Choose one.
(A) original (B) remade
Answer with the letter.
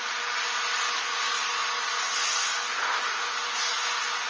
A